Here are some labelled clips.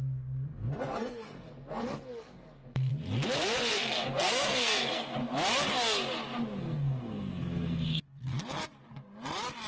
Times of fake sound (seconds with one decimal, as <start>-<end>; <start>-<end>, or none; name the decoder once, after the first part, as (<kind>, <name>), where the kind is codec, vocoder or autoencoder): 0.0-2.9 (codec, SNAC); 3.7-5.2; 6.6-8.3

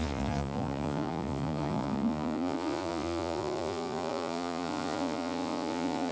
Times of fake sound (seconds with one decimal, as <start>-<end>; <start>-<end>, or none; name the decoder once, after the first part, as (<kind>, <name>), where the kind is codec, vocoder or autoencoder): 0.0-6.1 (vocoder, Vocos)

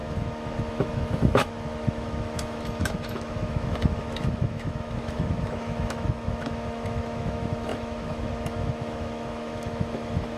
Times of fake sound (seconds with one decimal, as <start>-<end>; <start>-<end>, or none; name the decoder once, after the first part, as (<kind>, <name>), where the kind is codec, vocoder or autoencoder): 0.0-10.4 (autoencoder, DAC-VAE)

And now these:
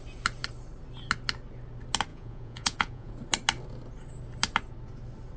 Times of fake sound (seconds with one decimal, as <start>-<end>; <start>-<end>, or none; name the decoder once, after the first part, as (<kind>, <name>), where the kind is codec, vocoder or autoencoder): 2.1-3.1 (vocoder, Vocos)

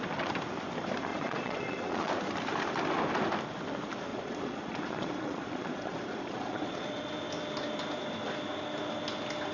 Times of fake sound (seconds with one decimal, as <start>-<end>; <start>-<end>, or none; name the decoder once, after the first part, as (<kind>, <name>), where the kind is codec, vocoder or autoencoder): 1.1-2.1 (vocoder, Vocos); 4.1-7.1

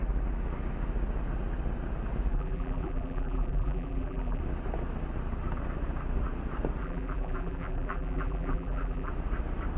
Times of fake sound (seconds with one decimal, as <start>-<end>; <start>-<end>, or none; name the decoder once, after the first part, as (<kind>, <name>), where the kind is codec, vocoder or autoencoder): 2.3-4.4 (vocoder, BigVGAN v2); 6.8-9.1